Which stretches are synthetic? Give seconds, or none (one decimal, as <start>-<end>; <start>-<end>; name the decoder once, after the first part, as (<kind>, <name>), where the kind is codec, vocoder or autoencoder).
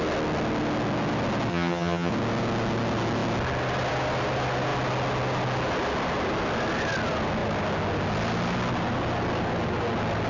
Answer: 1.5-2.1 (vocoder, HiFi-GAN)